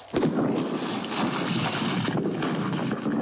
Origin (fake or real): real